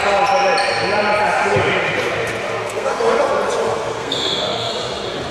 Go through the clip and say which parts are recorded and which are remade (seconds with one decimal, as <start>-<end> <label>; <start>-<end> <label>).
0.0-2.6 recorded; 2.6-3.2 remade; 3.2-4.0 recorded; 4.0-4.7 remade; 4.7-5.3 recorded

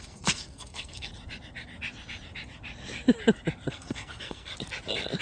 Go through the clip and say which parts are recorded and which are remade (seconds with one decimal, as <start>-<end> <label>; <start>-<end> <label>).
0.0-1.1 remade; 1.1-3.7 recorded; 3.7-4.5 remade; 4.5-5.2 recorded

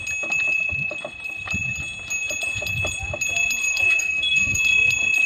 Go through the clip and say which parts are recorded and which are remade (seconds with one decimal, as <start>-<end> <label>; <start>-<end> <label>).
0.0-3.6 recorded; 3.6-4.6 remade; 4.6-5.3 recorded

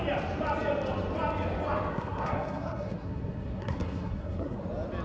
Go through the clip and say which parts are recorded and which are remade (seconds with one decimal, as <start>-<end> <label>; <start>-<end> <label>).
0.0-1.9 recorded; 1.9-4.6 remade; 4.6-5.0 recorded

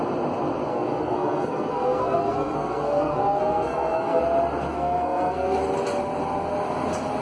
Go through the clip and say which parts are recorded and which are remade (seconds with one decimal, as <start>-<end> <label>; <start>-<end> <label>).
0.0-0.7 recorded; 0.7-4.2 remade; 4.2-4.7 recorded; 4.7-5.6 remade; 5.6-7.2 recorded

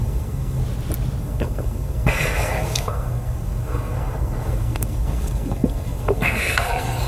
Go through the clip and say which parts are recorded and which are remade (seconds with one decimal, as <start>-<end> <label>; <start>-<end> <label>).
0.0-0.6 remade; 0.6-1.2 recorded; 1.2-7.1 remade

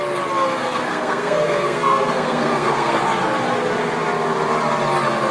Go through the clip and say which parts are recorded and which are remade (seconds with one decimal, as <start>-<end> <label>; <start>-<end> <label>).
0.0-0.6 recorded; 0.6-3.0 remade; 3.0-5.3 recorded